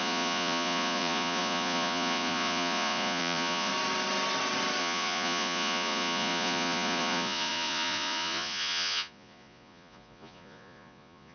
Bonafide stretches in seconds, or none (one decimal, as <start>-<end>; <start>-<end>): 3.7-4.8